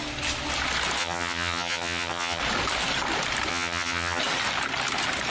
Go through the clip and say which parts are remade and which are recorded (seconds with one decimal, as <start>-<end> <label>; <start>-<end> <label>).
0.0-1.0 recorded; 1.0-2.4 remade; 2.4-3.5 recorded; 3.5-4.2 remade; 4.2-5.3 recorded